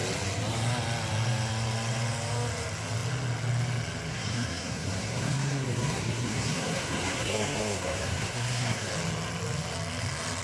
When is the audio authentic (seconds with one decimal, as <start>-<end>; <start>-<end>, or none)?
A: 0.0-4.1; 8.9-10.4